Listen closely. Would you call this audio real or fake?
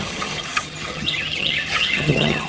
fake